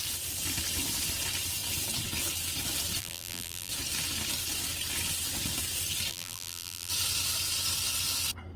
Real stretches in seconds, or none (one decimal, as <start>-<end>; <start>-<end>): 0.0-3.0; 3.7-6.1; 6.9-8.6